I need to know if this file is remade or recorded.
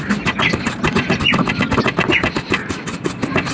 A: recorded